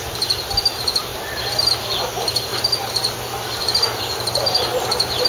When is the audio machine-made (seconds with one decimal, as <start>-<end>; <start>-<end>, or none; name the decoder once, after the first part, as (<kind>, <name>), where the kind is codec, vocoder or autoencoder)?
none